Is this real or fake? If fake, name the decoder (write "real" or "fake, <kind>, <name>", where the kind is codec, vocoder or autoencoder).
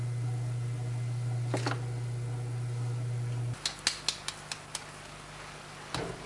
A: real